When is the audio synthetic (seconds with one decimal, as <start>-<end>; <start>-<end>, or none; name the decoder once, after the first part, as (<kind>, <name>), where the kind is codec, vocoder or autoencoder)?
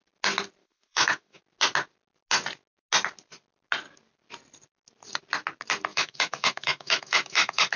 0.6-1.4 (autoencoder, DAC-VAE); 5.9-7.8